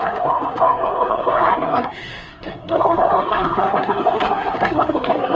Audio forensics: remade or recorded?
remade